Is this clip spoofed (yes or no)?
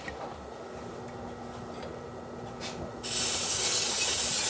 no